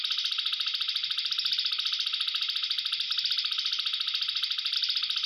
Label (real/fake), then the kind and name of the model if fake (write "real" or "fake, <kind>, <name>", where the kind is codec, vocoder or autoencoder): real